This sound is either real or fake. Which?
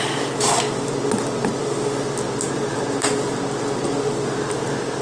real